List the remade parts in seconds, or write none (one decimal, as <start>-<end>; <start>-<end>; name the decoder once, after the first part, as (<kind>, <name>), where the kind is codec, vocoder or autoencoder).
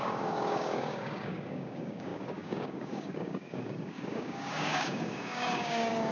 0.0-6.1 (codec, DAC)